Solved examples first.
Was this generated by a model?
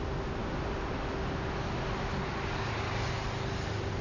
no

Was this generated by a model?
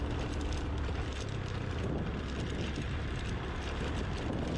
no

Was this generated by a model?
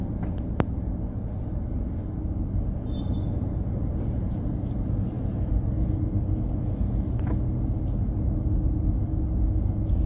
no